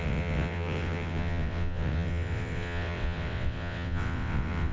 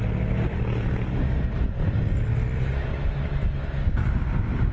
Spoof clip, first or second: first